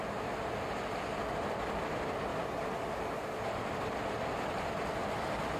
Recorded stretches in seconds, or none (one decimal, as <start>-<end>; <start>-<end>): 0.0-5.6